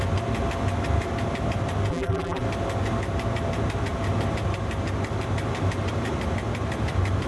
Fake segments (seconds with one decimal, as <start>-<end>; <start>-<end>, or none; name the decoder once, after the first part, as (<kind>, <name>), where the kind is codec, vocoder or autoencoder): 1.9-2.4 (vocoder, BigVGAN v2)